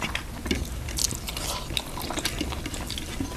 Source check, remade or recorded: recorded